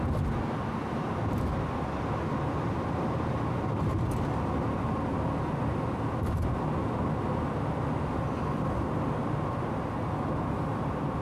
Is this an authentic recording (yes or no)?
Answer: yes